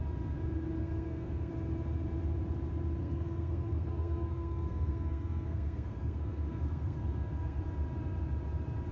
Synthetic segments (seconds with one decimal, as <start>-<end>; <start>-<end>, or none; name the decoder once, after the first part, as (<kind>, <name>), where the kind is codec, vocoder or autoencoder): 0.8-1.5 (codec, SNAC); 3.0-7.6